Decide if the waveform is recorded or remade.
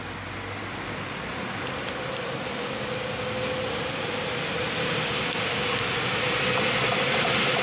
recorded